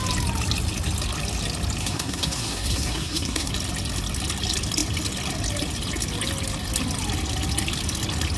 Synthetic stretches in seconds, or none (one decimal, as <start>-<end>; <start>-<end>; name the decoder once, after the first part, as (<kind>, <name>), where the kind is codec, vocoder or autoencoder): 1.8-3.5 (codec, SNAC)